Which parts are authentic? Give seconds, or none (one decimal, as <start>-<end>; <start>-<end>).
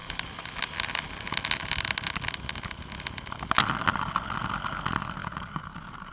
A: 0.0-5.2